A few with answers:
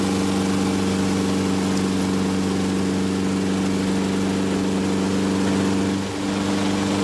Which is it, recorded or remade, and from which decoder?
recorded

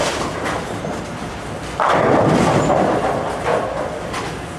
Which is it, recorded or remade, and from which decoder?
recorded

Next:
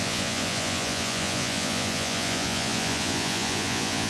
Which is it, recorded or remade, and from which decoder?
remade, vocoder, Vocos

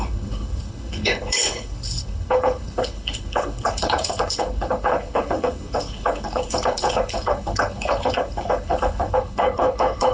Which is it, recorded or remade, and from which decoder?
remade, codec, HILCodec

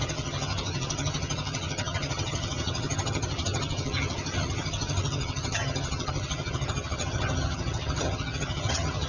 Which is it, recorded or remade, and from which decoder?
remade, vocoder, HiFi-GAN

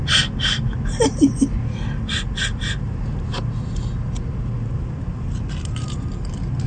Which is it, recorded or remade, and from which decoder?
recorded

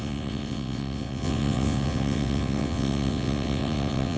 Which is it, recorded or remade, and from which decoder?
remade, vocoder, WaveNeXt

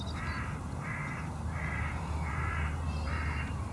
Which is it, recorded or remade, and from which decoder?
remade, vocoder, BigVGAN v2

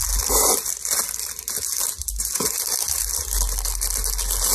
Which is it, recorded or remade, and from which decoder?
recorded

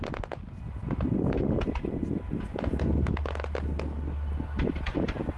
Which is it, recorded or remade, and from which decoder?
recorded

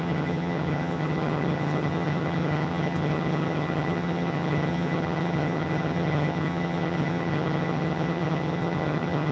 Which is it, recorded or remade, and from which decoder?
remade, vocoder, HiFi-GAN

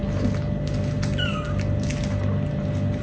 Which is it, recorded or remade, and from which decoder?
recorded